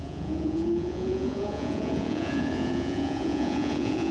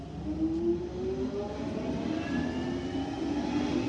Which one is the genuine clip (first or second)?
second